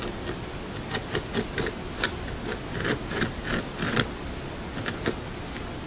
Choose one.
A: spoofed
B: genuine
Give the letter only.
B